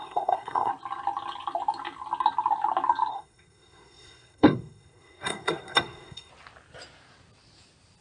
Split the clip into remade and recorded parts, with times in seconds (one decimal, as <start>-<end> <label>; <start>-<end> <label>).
0.0-0.7 remade; 0.7-3.1 recorded; 3.1-6.3 remade; 6.3-8.0 recorded